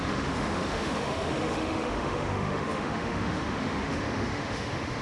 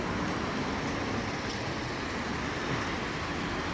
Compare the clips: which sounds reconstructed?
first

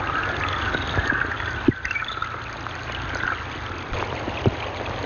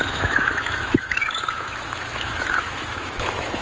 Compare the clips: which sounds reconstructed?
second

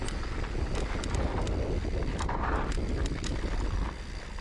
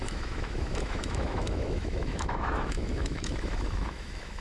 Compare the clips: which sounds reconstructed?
second